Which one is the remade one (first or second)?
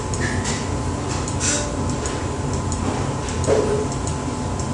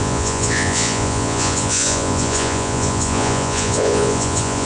second